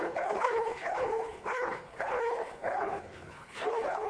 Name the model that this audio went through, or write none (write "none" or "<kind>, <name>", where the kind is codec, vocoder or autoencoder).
codec, HILCodec